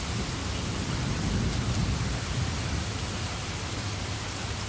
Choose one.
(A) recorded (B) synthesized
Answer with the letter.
A